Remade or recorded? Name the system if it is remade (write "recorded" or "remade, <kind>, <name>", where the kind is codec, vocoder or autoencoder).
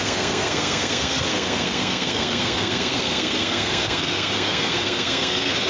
remade, codec, SNAC